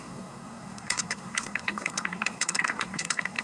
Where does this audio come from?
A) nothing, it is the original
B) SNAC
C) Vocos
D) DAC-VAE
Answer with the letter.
B